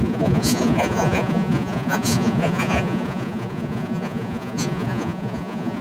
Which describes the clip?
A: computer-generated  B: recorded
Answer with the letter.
A